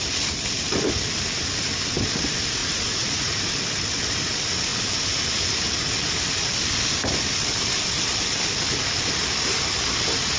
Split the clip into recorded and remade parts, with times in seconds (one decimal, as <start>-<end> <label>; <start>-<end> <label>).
0.0-2.6 recorded; 2.6-3.5 remade; 3.5-10.4 recorded